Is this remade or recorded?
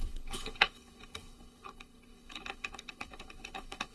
remade